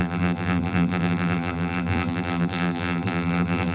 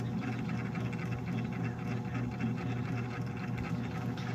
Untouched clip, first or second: second